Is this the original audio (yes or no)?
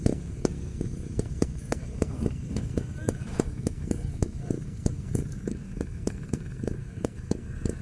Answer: no